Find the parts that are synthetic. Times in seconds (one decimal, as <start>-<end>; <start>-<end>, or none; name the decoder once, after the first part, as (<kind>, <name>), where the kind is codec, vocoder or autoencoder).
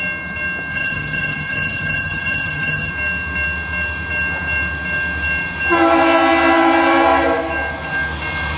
0.7-2.9 (vocoder, HiFi-GAN)